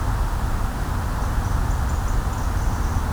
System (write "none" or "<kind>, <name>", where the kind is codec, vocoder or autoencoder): none